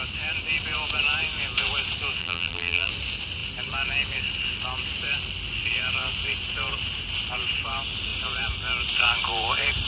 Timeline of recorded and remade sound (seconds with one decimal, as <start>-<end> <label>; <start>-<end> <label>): 0.0-2.2 recorded; 2.2-2.9 remade; 2.9-9.9 recorded